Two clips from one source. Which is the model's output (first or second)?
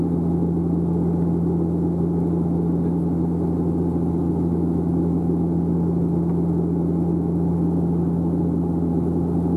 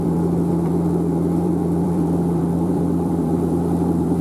second